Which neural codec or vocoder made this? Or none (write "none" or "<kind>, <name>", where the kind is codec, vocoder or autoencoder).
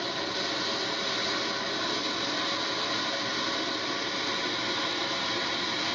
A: none